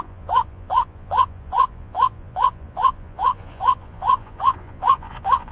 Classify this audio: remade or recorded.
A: remade